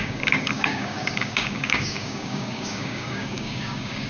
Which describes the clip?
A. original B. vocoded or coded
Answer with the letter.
B